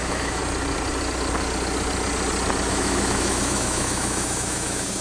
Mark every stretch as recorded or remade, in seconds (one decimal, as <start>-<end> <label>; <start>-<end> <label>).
0.0-0.4 remade; 0.4-2.7 recorded; 2.7-5.0 remade